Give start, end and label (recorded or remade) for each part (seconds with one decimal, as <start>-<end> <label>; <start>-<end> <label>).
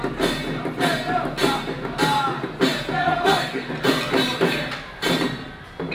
0.0-3.0 recorded; 3.0-3.7 remade; 3.7-5.9 recorded